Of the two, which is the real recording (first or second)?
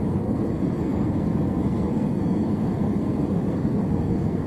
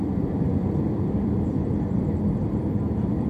second